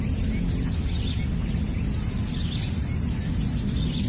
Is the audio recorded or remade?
recorded